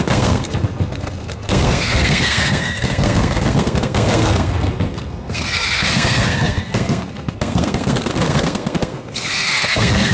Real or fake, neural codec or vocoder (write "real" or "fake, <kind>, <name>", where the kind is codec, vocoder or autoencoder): fake, codec, SNAC